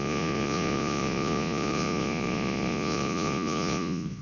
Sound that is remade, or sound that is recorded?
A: remade